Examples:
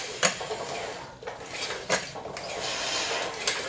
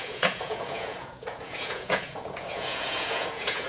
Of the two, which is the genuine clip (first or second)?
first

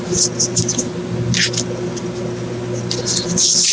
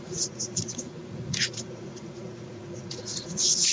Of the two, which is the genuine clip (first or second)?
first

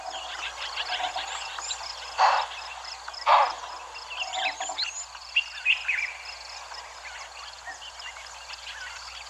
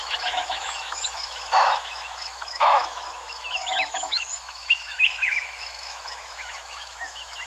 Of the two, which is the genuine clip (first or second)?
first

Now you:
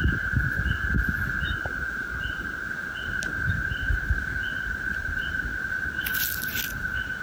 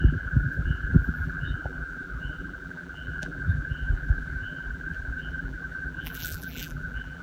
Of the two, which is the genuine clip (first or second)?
first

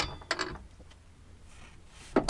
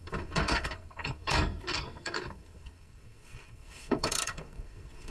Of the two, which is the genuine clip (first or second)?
first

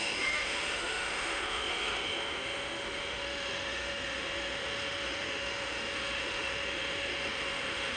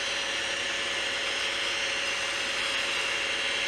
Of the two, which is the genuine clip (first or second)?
second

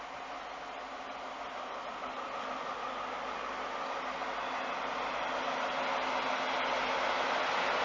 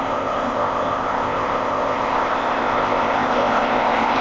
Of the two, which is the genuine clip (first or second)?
first